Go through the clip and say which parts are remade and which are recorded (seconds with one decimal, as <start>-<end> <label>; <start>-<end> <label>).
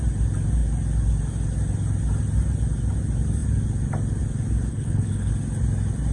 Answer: 0.0-4.7 recorded; 4.7-5.3 remade; 5.3-6.1 recorded